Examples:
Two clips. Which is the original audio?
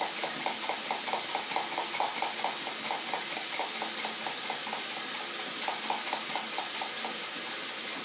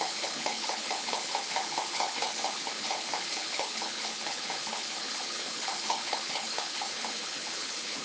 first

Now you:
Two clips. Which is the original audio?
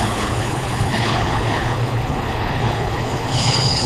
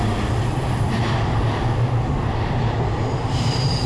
second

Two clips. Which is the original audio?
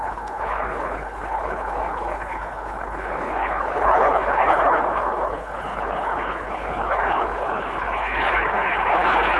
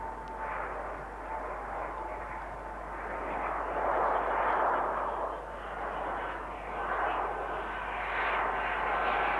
second